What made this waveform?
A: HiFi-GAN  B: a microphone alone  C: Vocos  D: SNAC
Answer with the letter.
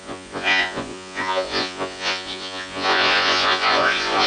C